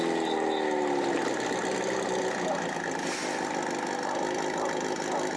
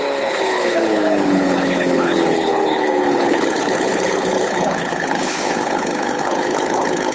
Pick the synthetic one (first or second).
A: second